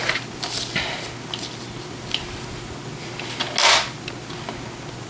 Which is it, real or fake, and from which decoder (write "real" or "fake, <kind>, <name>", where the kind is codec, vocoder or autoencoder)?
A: real